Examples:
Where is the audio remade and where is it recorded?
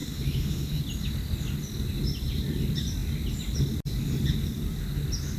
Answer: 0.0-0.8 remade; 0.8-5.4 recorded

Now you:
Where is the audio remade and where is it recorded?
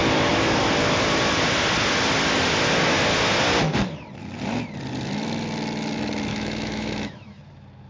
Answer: 0.0-6.3 recorded; 6.3-7.4 remade; 7.4-7.9 recorded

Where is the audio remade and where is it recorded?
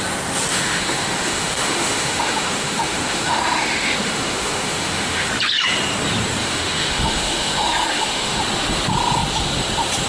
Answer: 0.0-0.5 recorded; 0.5-5.3 remade; 5.3-6.4 recorded; 6.4-8.4 remade; 8.4-10.1 recorded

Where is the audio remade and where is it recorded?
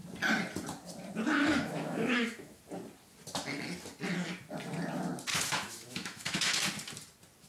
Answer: 0.0-1.5 recorded; 1.5-2.6 remade; 2.6-5.3 recorded; 5.3-6.6 remade; 6.6-7.5 recorded